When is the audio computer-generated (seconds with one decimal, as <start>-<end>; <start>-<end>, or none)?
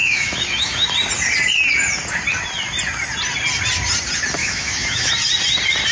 0.0-0.9; 4.4-5.1